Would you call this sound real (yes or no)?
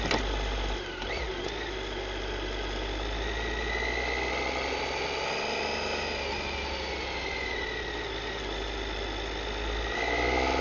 yes